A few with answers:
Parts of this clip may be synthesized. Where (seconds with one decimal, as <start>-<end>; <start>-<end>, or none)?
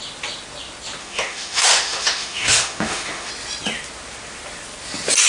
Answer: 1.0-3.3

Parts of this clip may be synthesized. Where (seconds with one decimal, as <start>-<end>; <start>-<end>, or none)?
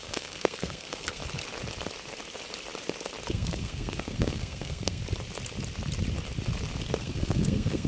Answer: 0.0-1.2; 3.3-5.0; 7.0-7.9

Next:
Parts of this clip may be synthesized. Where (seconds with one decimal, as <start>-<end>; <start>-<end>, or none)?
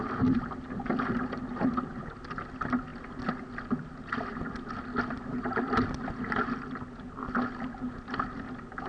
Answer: 0.0-0.9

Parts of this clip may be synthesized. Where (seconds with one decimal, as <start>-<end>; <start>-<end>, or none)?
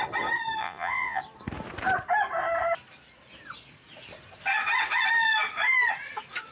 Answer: 0.6-1.2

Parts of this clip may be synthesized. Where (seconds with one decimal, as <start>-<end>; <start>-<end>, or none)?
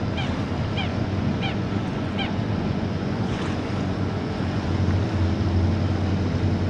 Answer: 0.9-4.9